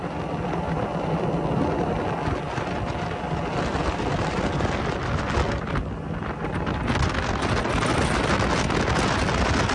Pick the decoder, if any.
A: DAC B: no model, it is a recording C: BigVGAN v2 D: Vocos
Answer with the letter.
B